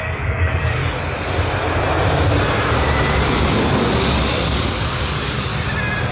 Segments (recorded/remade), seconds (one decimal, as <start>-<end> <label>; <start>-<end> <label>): 0.0-0.8 remade; 0.8-3.5 recorded; 3.5-5.5 remade; 5.5-6.1 recorded